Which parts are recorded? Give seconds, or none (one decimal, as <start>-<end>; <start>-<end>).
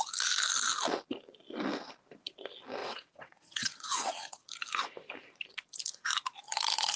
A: 0.0-2.8; 4.5-7.0